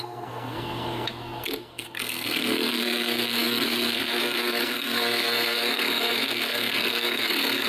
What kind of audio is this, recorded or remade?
remade